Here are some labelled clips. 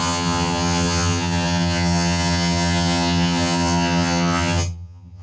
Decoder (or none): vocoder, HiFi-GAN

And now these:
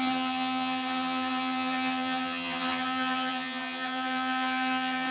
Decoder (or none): vocoder, HiFi-GAN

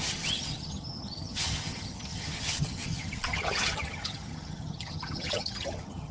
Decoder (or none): vocoder, HiFi-GAN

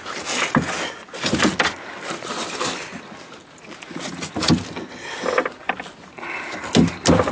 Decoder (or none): none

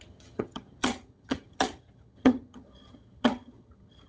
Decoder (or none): vocoder, HiFi-GAN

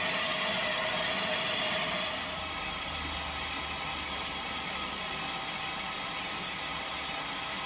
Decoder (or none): none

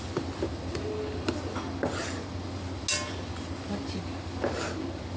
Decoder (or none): none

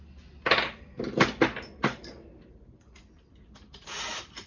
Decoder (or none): none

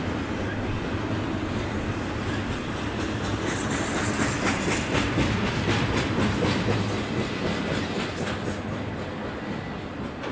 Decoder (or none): none